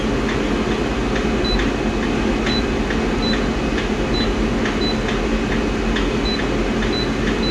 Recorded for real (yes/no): yes